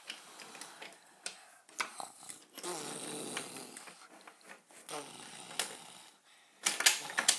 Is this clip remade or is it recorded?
recorded